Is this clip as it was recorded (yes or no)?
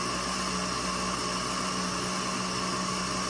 yes